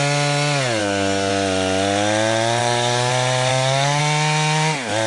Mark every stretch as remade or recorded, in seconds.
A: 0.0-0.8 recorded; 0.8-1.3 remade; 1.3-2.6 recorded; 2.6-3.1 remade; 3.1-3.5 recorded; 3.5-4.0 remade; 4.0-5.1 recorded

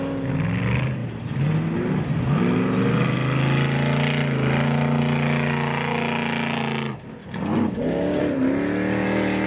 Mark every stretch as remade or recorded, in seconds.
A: 0.0-7.2 recorded; 7.2-8.2 remade; 8.2-9.5 recorded

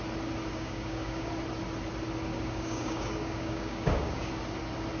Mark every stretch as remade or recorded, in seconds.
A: 0.0-0.5 recorded; 0.5-1.3 remade; 1.3-2.3 recorded; 2.3-4.3 remade; 4.3-5.0 recorded

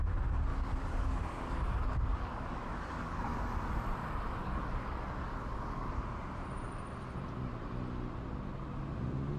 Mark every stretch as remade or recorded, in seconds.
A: 0.0-0.5 recorded; 0.5-3.5 remade; 3.5-4.4 recorded; 4.4-5.9 remade; 5.9-9.4 recorded

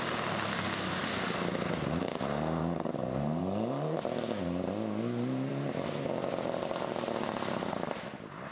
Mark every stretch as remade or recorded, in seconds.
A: 0.0-2.6 recorded; 2.6-3.4 remade; 3.4-8.5 recorded

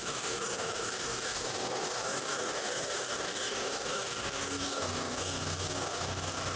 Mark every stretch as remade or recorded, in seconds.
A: 0.0-6.6 remade